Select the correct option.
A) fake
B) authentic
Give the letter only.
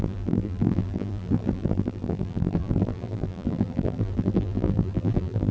A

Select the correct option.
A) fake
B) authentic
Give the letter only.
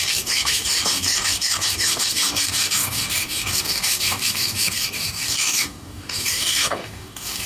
A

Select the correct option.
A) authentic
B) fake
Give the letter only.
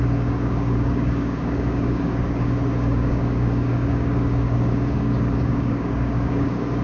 B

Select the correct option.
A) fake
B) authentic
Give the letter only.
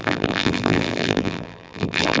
A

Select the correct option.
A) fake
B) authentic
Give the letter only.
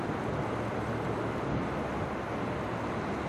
B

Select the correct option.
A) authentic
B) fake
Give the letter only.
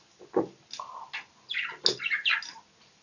A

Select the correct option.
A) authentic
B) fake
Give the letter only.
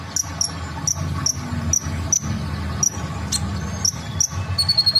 A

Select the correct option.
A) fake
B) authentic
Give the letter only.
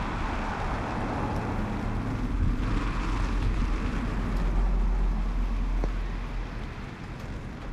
B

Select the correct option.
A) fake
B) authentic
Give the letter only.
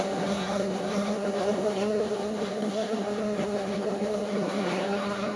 A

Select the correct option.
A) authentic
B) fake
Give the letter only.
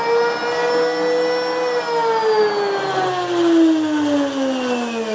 A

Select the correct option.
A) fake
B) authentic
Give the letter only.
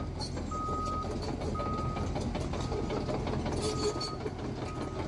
B